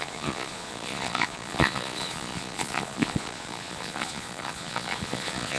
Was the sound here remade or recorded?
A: remade